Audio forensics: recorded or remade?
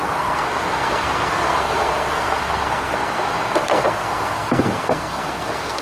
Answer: remade